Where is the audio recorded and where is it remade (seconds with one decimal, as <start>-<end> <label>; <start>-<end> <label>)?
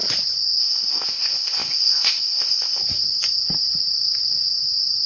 0.0-0.6 recorded; 0.6-2.8 remade; 2.8-5.1 recorded